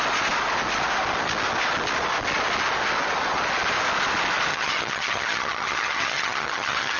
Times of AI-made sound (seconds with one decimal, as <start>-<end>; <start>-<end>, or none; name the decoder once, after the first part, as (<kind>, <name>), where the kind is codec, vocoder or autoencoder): 4.5-7.0 (vocoder, HiFi-GAN)